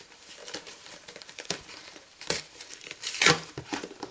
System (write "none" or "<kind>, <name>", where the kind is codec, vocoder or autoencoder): vocoder, BigVGAN v2